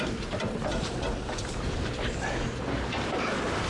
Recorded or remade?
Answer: recorded